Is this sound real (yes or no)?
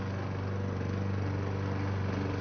yes